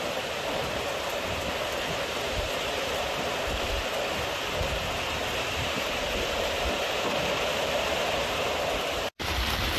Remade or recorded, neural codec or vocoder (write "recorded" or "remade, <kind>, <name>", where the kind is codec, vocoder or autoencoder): recorded